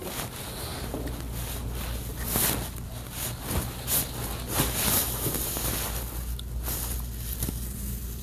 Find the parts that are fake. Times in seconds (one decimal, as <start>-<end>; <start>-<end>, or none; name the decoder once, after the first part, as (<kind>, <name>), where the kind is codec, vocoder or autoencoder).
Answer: none